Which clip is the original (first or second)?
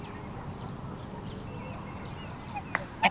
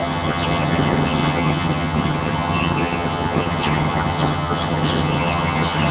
first